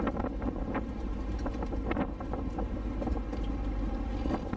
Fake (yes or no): yes